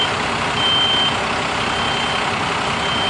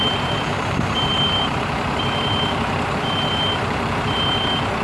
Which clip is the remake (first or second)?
second